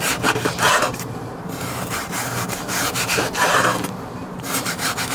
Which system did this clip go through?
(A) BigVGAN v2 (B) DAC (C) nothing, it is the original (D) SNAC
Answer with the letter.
A